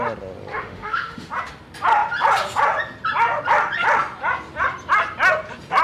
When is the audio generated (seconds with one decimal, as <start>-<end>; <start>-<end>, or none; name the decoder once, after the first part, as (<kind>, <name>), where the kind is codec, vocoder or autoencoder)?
0.5-1.3 (autoencoder, DAC-VAE)